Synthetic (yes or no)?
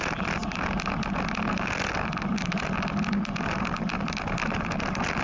no